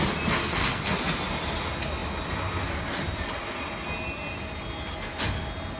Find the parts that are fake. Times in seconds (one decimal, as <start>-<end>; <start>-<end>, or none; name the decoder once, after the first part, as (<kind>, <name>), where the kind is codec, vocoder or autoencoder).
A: 0.4-1.0 (codec, SNAC)